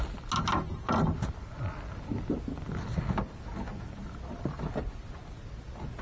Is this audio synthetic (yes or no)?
no